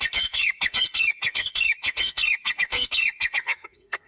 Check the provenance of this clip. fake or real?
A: fake